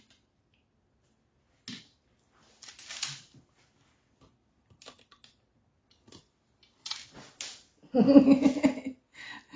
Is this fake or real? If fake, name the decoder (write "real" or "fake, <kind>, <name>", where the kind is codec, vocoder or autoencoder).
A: real